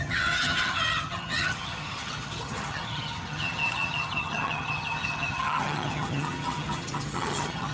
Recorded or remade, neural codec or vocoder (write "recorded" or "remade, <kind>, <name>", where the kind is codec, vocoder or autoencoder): remade, vocoder, HiFi-GAN